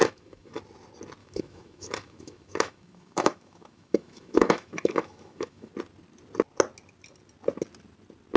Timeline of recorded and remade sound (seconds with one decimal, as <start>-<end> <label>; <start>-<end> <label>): 0.0-0.6 remade; 0.6-1.2 recorded; 1.2-5.7 remade; 5.7-8.4 recorded